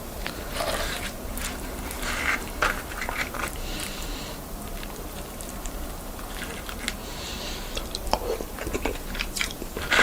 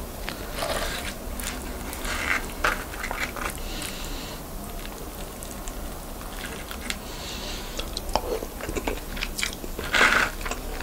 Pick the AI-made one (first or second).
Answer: first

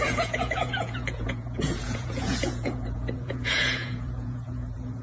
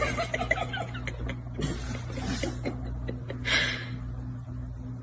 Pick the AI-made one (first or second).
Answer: first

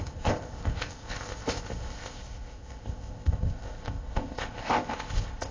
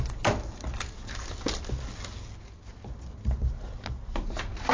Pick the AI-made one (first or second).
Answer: first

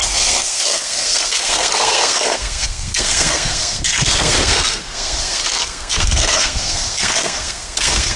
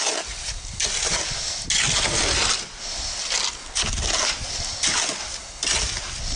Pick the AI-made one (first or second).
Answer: first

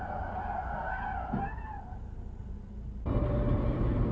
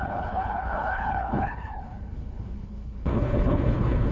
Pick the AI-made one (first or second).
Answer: second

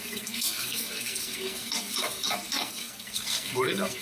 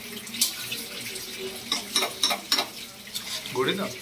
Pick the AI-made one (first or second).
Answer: first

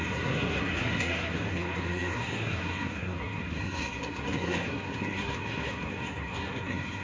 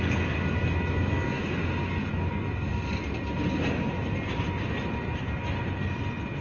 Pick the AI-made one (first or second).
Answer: first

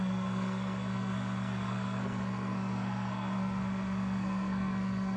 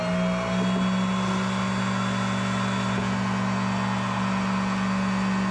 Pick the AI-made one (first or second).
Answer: first